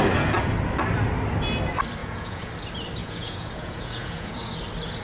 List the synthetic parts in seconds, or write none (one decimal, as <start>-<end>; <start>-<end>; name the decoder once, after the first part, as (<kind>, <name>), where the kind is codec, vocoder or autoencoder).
2.0-2.5 (vocoder, Vocos); 3.0-4.6